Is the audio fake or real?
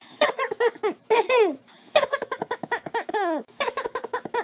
fake